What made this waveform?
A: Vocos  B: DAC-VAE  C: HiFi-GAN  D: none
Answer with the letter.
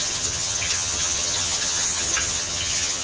C